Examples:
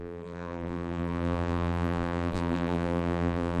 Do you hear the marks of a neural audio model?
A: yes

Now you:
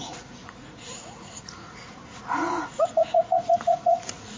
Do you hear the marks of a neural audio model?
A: yes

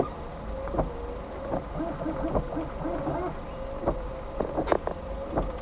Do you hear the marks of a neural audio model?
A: no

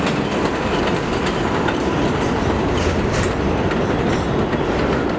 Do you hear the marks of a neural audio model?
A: no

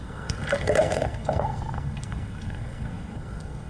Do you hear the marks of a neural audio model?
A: yes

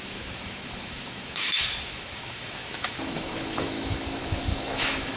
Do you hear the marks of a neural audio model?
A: yes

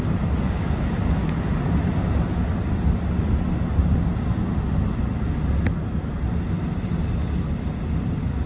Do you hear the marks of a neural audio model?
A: no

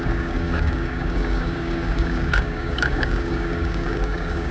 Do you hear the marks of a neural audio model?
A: yes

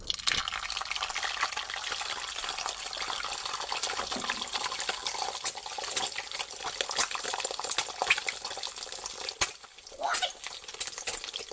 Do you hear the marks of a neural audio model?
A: no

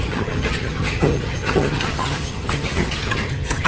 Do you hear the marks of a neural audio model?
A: yes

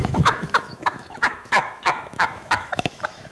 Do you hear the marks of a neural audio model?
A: yes